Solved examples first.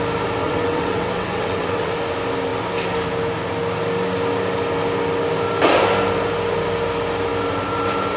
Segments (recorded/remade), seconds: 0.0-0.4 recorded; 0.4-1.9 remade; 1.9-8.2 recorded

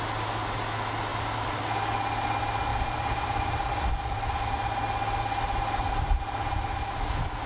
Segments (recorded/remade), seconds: 0.0-1.1 recorded; 1.1-1.6 remade; 1.6-2.7 recorded; 2.7-3.9 remade; 3.9-7.5 recorded

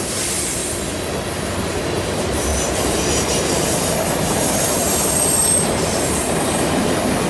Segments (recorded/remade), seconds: 0.0-0.6 remade; 0.6-2.1 recorded; 2.1-5.4 remade; 5.4-7.3 recorded

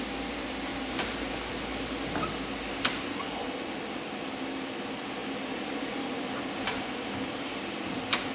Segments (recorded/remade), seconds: 0.0-0.7 recorded; 0.7-1.5 remade; 1.5-8.3 recorded

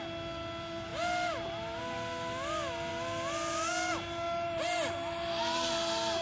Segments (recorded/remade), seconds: 0.0-6.2 recorded

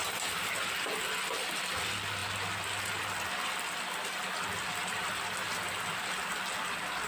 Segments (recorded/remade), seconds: 0.0-2.2 recorded; 2.2-6.4 remade; 6.4-7.1 recorded